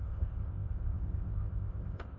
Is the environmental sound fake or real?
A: fake